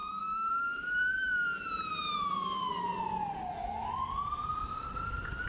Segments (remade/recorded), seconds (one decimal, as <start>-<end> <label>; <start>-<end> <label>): 0.0-3.6 remade; 3.6-4.3 recorded; 4.3-5.5 remade